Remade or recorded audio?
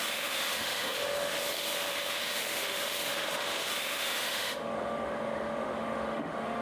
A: remade